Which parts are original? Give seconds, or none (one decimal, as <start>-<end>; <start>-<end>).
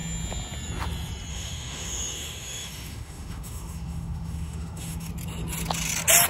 0.0-1.3; 5.1-6.3